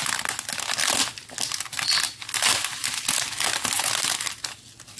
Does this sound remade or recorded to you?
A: recorded